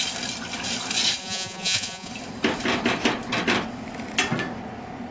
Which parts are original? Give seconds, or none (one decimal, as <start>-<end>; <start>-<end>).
0.0-1.2; 2.1-5.1